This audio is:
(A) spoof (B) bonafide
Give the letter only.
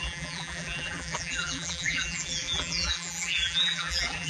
A